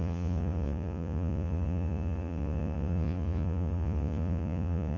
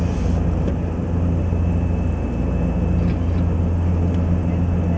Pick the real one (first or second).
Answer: second